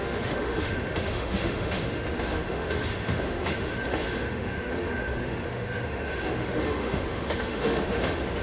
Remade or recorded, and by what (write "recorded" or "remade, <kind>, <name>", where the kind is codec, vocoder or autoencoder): remade, autoencoder, DAC-VAE